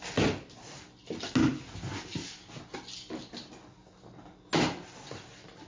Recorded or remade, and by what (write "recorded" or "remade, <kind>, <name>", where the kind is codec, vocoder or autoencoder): recorded